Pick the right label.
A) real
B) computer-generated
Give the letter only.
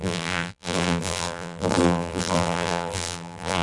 B